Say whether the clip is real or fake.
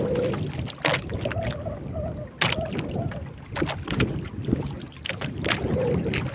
real